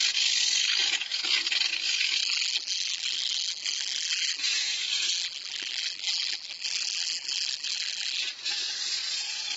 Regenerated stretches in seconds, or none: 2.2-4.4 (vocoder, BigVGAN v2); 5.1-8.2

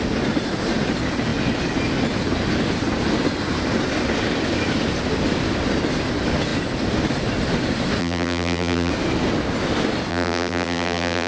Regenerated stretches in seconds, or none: 8.0-8.9 (vocoder, BigVGAN v2); 10.1-11.3

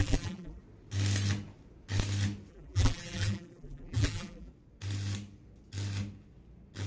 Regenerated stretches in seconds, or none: 0.0-0.6 (vocoder, BigVGAN v2); 2.5-4.5

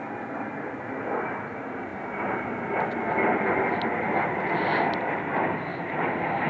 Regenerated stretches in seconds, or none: 5.7-6.5 (vocoder, BigVGAN v2)

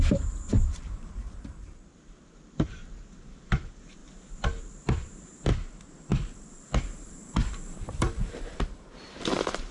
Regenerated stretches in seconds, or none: 0.0-4.0 (vocoder, BigVGAN v2); 4.6-5.5; 6.8-9.7